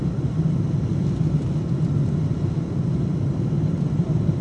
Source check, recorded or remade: remade